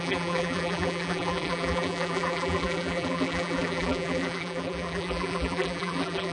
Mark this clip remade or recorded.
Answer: remade